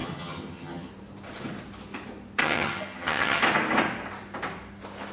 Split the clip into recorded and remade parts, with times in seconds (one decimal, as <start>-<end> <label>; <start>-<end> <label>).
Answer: 0.0-0.9 remade; 0.9-2.4 recorded; 2.4-3.4 remade; 3.4-5.1 recorded